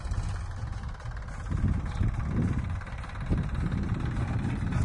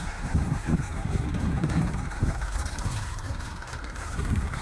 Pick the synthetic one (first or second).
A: second